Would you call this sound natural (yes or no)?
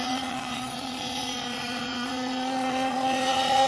no